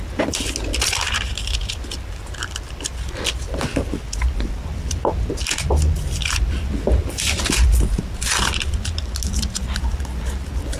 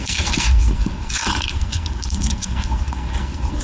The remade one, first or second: second